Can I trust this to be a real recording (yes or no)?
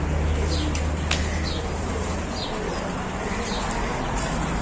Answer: yes